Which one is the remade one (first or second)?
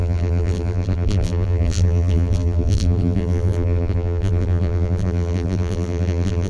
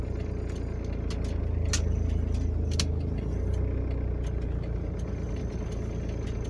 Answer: first